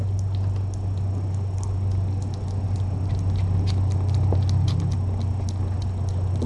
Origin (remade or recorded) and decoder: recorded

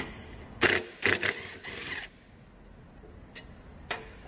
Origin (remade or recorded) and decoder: recorded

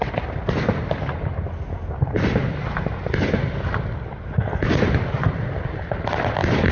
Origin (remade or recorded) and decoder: recorded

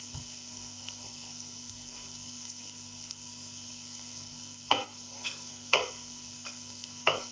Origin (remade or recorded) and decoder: remade, codec, SNAC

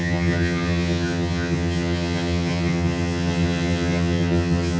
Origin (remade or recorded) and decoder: remade, vocoder, HiFi-GAN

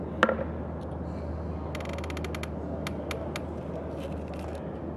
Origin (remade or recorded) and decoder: recorded